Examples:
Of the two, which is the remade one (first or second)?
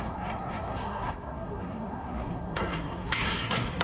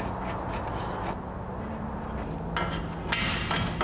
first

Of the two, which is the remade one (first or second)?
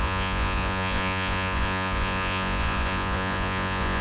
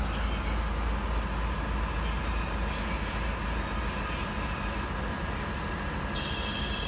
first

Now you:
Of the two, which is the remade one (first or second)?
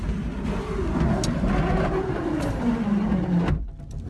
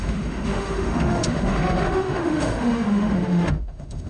second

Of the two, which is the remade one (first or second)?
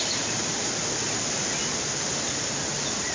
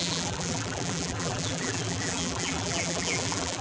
second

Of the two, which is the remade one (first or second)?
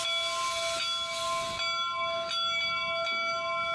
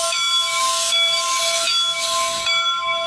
second